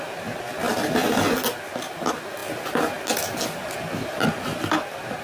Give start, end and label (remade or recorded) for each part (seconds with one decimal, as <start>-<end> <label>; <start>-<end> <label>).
0.0-5.2 recorded

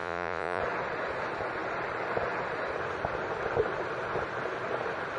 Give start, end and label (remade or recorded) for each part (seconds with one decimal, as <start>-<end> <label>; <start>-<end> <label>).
0.0-0.6 remade; 0.6-5.2 recorded

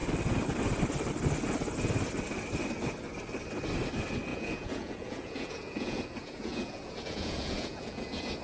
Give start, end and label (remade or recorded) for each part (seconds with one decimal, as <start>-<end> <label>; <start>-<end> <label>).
0.0-4.3 recorded; 4.3-8.4 remade

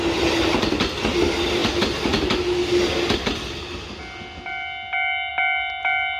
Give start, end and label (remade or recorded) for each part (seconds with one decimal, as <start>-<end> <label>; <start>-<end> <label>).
0.0-6.2 recorded

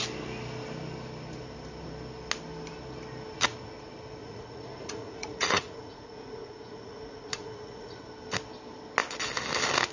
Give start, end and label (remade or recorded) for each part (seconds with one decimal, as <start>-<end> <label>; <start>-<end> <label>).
0.0-4.2 recorded; 4.2-8.1 remade; 8.1-9.9 recorded

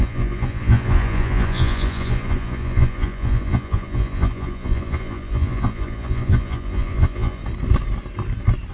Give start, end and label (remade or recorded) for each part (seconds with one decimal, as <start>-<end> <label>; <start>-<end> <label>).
0.0-7.4 remade; 7.4-8.7 recorded

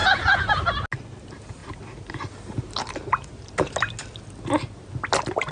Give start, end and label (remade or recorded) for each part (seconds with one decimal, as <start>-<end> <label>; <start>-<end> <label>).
0.0-0.6 remade; 0.6-5.5 recorded

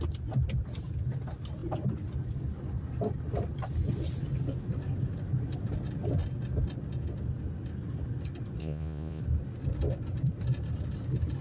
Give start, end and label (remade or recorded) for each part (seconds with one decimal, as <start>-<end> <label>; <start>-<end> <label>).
0.0-8.6 recorded; 8.6-9.2 remade; 9.2-11.4 recorded